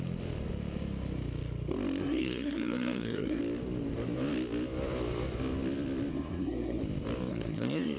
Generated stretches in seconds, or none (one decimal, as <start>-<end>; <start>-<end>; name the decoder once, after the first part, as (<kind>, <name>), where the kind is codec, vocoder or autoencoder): 2.0-3.4 (codec, SNAC); 6.1-6.8; 7.3-8.0